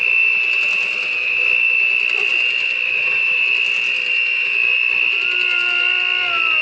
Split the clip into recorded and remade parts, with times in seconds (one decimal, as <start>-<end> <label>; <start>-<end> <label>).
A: 0.0-6.6 recorded